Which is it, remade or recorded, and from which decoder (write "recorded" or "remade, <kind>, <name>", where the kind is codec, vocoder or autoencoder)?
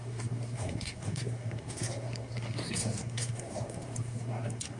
remade, codec, SNAC